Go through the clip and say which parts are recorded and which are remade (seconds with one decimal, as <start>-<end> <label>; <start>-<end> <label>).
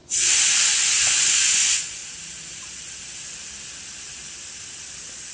0.0-0.6 recorded; 0.6-2.0 remade; 2.0-5.3 recorded